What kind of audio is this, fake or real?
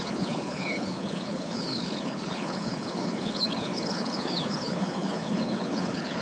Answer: fake